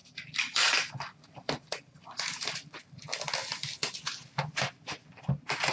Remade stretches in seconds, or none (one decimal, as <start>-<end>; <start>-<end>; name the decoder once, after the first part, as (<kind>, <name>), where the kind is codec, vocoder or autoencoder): 0.0-2.8 (vocoder, BigVGAN v2)